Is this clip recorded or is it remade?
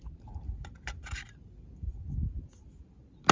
recorded